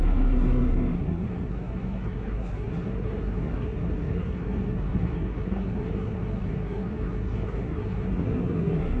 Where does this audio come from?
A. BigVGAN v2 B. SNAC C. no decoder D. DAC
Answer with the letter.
B